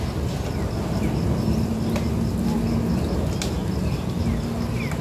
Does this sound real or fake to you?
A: real